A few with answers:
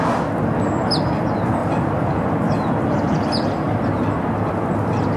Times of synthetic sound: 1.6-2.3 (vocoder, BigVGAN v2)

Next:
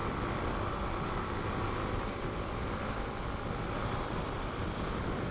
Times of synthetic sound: none

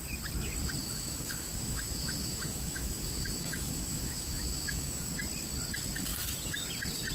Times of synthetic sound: 0.8-5.1 (autoencoder, DAC-VAE)

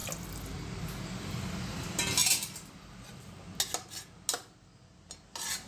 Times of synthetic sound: none

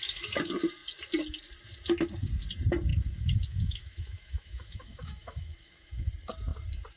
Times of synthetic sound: 2.9-6.1 (autoencoder, DAC-VAE)

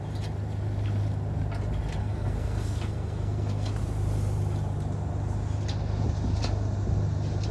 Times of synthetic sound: 2.0-3.7 (codec, SNAC)

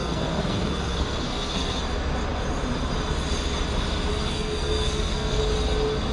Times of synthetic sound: 0.0-1.8 (codec, SNAC); 4.1-5.4